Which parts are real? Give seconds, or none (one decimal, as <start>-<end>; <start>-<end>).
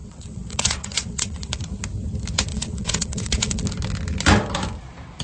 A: 1.6-2.5; 3.6-5.2